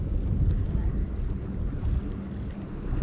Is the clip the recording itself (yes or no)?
yes